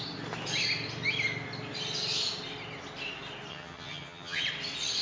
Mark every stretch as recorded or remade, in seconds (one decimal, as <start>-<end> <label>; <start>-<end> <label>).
0.0-3.5 recorded; 3.5-4.4 remade; 4.4-5.0 recorded